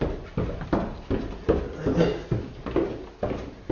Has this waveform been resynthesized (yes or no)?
no